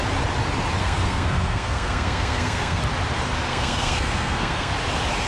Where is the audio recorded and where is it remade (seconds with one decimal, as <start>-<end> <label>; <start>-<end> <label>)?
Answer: 0.0-0.8 recorded; 0.8-2.8 remade; 2.8-3.5 recorded; 3.5-4.7 remade; 4.7-5.3 recorded